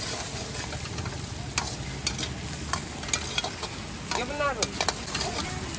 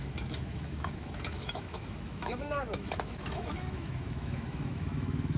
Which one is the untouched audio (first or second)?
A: first